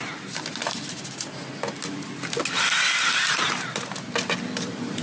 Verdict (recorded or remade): recorded